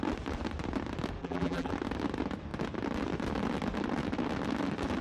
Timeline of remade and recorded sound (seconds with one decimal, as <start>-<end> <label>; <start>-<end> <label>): 0.0-1.2 recorded; 1.2-1.7 remade; 1.7-5.0 recorded